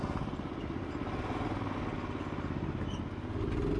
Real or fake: real